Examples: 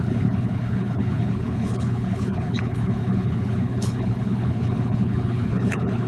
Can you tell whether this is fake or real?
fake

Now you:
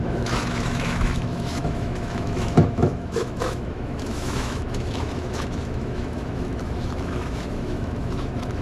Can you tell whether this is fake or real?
fake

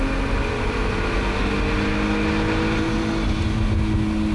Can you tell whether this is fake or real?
real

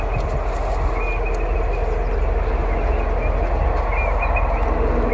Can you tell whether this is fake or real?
real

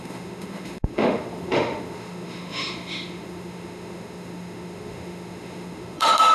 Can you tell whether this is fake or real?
fake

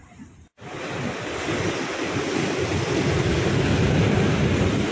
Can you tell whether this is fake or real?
real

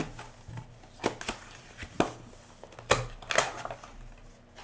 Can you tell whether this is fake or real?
real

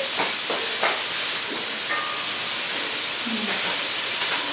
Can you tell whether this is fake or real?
real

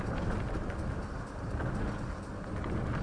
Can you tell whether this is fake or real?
real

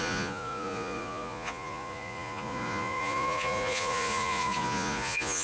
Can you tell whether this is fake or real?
fake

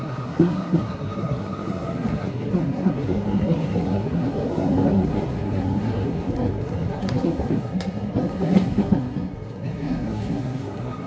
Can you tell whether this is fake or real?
fake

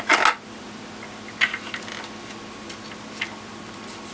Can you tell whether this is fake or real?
real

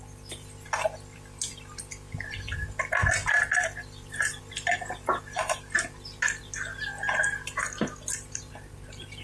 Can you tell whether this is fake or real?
real